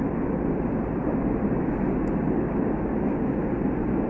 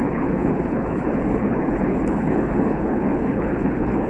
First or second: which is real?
first